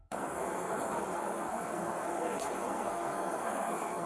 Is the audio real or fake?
fake